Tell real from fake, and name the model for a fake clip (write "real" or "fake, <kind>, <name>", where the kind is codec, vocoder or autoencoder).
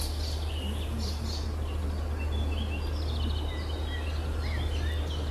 real